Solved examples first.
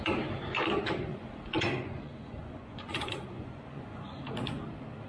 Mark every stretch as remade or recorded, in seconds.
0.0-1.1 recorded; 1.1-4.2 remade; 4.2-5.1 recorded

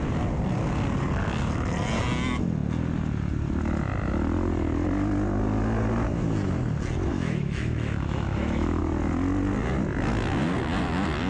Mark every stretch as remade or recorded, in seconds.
0.0-7.1 recorded; 7.1-8.8 remade; 8.8-11.3 recorded

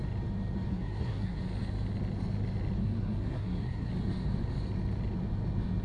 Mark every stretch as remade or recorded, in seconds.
0.0-0.7 recorded; 0.7-1.4 remade; 1.4-2.8 recorded; 2.8-3.9 remade; 3.9-5.8 recorded